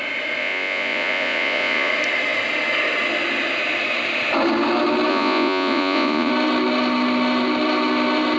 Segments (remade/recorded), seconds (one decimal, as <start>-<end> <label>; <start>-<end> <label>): 0.0-0.4 recorded; 0.4-1.9 remade; 1.9-5.1 recorded; 5.1-6.3 remade; 6.3-8.4 recorded